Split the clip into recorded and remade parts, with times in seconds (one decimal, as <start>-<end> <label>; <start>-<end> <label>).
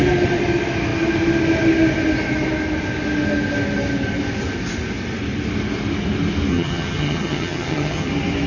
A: 0.0-6.5 recorded; 6.5-8.1 remade; 8.1-8.5 recorded